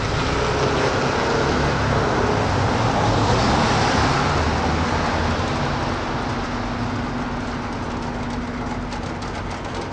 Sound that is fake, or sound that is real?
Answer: real